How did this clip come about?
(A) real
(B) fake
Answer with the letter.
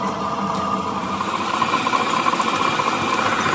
A